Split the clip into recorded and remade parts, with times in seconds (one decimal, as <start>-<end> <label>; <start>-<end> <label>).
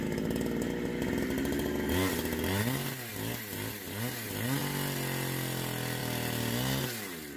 0.0-7.4 recorded